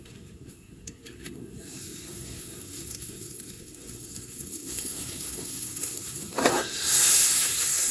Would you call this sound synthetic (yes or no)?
yes